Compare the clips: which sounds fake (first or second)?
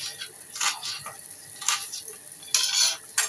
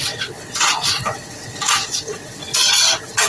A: second